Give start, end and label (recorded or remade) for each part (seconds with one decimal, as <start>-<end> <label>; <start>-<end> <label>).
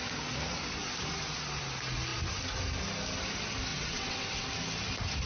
0.0-3.7 recorded; 3.7-4.5 remade; 4.5-5.3 recorded